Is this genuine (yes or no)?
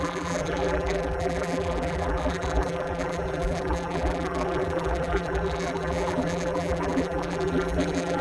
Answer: no